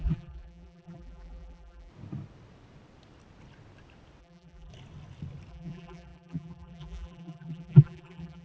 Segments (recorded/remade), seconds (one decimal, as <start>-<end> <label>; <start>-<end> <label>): 0.0-1.9 remade; 1.9-4.2 recorded; 4.2-4.7 remade; 4.7-5.5 recorded; 5.5-8.4 remade